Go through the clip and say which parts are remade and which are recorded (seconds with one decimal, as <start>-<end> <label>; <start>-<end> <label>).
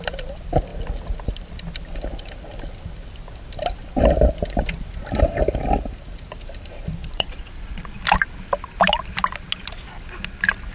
0.0-7.0 recorded; 7.0-8.0 remade; 8.0-10.7 recorded